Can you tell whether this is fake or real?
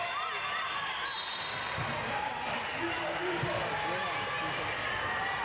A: real